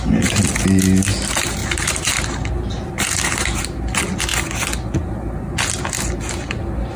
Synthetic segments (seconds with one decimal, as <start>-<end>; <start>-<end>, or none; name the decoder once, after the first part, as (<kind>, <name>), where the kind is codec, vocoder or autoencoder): 1.6-3.6 (vocoder, BigVGAN v2)

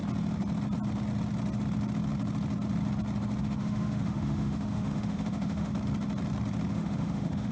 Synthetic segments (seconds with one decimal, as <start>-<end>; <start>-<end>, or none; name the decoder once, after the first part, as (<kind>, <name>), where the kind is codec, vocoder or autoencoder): 3.4-5.7 (autoencoder, DAC-VAE); 6.7-7.5

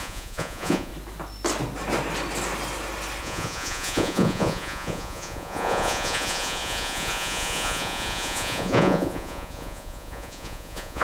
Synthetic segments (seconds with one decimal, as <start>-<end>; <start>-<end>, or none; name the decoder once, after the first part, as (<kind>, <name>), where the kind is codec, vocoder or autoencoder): 0.0-0.9 (vocoder, Vocos); 3.2-11.0

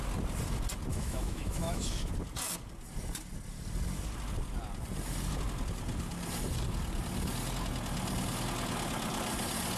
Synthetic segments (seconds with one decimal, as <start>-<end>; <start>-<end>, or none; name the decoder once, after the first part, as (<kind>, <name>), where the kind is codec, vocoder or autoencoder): 0.9-2.1 (autoencoder, DAC-VAE)